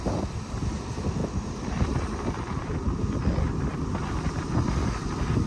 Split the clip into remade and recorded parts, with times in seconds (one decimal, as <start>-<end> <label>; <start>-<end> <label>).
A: 0.0-5.5 recorded